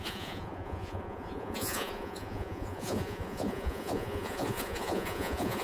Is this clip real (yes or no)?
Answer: no